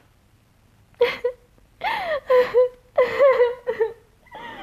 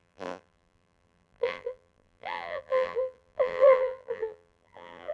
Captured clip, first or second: first